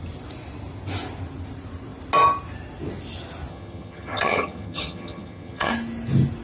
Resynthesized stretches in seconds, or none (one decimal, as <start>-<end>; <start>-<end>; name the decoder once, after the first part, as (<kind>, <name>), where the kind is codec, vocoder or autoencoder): 3.5-5.7 (vocoder, HiFi-GAN)